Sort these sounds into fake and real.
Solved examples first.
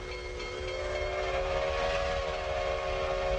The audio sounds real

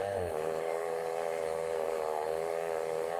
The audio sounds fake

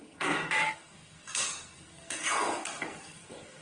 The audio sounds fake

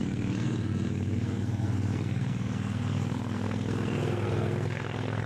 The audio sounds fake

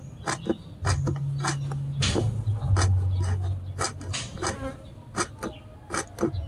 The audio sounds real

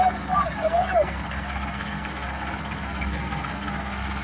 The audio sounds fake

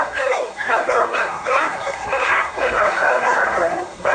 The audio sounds fake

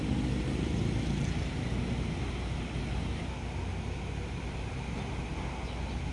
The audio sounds real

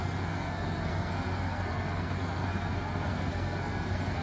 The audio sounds fake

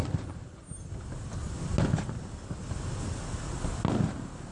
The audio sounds real